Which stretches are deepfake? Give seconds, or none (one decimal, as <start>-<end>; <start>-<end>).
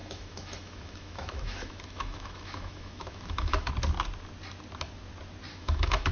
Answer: 0.0-3.7; 5.5-6.1